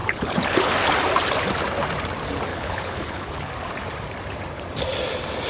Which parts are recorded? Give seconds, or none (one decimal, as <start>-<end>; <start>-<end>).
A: 0.7-2.5; 3.5-5.5